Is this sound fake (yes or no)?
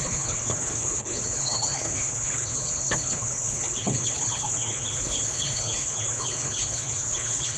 yes